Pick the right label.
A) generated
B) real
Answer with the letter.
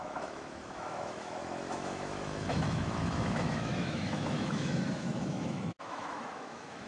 A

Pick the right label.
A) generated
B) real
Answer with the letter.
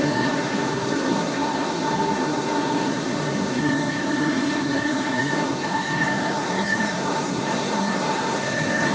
A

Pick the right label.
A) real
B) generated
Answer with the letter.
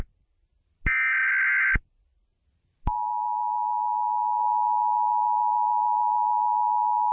A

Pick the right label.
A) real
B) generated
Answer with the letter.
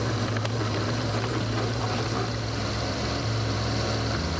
B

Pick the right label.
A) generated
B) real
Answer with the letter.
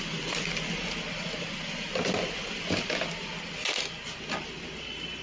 B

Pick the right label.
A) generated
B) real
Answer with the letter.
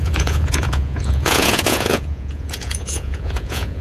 A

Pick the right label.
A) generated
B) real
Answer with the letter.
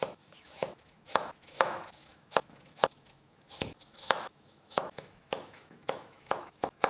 A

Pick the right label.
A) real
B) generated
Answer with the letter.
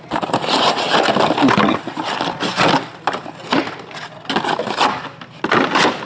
A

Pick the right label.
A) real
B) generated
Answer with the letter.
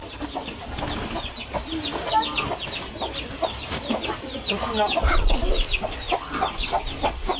A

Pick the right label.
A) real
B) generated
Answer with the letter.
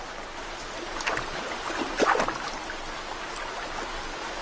A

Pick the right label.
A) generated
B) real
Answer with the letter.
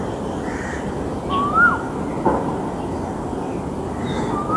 B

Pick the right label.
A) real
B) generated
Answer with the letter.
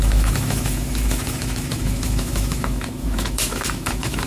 B